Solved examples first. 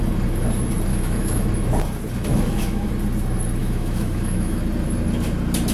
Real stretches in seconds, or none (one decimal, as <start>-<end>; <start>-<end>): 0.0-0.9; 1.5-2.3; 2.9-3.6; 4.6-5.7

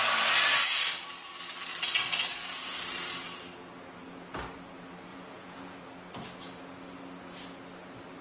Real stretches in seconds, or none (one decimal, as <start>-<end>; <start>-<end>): 0.0-2.3; 2.8-5.1; 5.8-8.2

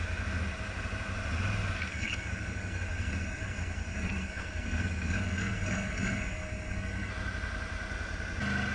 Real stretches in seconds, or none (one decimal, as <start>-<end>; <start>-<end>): 0.0-1.9; 7.1-8.7

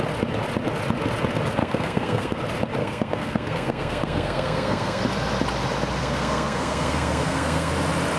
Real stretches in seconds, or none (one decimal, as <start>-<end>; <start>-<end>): 0.0-1.6; 2.4-2.8; 5.0-6.0; 7.7-8.2

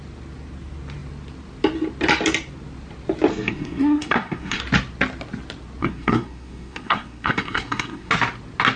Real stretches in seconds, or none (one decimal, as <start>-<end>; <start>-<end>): 0.0-3.3; 4.6-5.8; 8.1-8.8

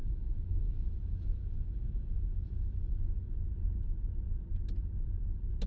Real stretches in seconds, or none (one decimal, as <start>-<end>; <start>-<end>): 2.9-5.7

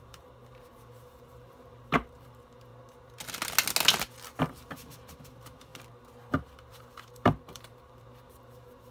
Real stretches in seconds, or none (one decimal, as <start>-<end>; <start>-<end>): 2.7-4.4; 5.7-6.3